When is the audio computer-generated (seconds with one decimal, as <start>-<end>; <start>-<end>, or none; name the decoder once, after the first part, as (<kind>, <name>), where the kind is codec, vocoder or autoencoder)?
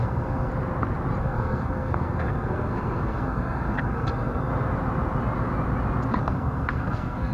0.0-0.5 (codec, SNAC); 1.2-4.5; 6.2-7.3